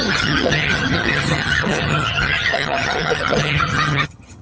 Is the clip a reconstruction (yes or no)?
yes